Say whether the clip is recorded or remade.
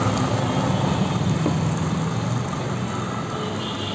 recorded